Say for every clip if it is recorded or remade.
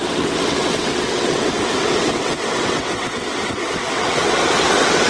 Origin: remade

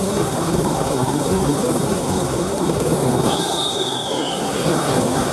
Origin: remade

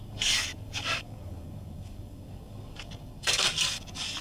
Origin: remade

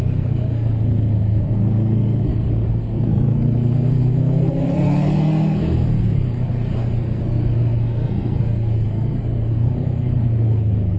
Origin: remade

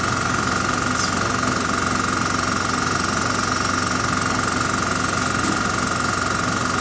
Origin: recorded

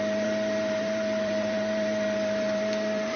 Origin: remade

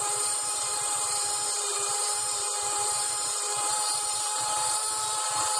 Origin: remade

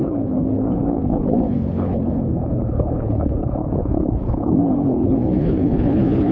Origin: remade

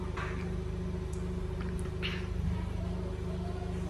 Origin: recorded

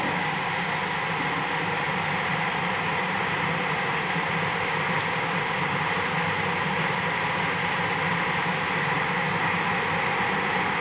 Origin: recorded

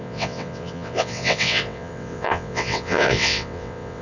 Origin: remade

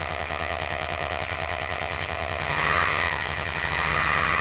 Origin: remade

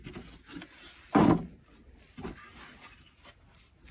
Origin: recorded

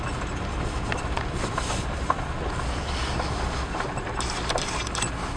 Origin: recorded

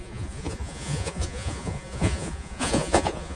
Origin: remade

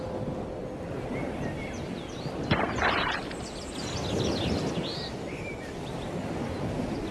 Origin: recorded